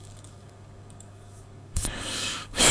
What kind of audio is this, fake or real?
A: fake